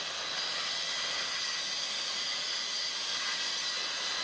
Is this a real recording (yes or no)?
yes